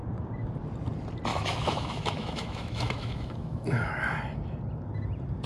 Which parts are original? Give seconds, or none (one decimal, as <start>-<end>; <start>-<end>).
0.0-1.3; 3.9-5.5